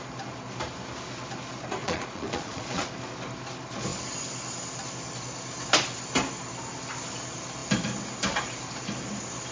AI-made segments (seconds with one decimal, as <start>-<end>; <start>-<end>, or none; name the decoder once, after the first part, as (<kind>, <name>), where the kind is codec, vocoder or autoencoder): 1.8-2.9 (vocoder, Vocos)